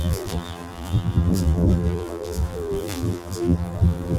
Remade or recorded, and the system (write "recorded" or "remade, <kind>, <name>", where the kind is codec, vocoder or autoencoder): remade, vocoder, BigVGAN v2